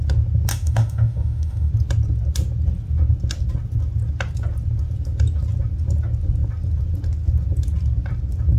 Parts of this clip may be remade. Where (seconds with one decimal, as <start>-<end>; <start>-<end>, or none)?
0.5-1.7